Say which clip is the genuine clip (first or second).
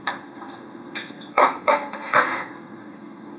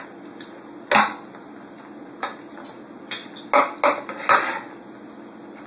second